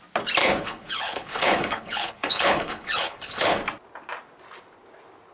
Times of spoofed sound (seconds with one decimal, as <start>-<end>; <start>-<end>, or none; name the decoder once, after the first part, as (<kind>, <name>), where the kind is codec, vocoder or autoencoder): 0.4-3.6 (codec, HILCodec)

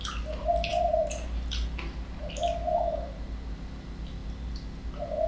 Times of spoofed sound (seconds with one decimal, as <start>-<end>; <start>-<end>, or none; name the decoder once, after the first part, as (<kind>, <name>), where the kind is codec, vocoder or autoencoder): none

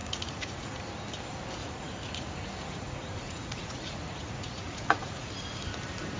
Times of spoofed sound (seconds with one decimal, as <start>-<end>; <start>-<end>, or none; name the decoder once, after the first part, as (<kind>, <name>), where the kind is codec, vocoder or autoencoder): 0.0-0.8 (vocoder, Vocos); 1.6-5.3

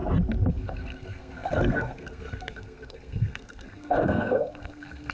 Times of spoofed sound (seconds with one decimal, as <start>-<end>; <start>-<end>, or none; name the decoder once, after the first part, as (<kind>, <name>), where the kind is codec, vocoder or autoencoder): 0.5-5.1 (codec, SNAC)

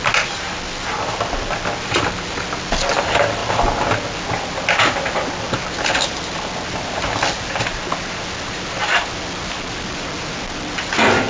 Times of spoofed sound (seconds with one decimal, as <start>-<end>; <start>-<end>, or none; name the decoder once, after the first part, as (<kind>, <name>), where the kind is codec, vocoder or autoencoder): none